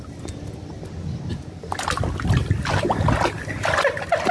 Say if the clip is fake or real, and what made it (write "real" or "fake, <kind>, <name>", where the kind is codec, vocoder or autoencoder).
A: real